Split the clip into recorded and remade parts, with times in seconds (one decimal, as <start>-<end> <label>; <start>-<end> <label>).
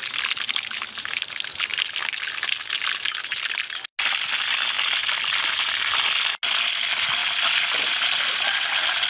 0.0-9.1 recorded